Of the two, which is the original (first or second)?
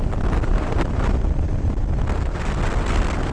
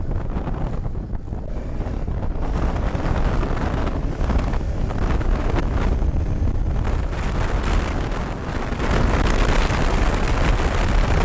second